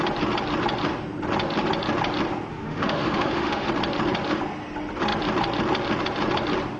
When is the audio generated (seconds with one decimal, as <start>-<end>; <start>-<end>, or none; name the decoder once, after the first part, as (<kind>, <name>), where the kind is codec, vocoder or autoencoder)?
2.5-3.7 (autoencoder, DAC-VAE)